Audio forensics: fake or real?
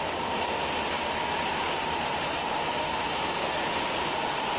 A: real